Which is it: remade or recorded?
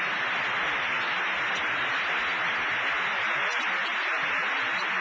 recorded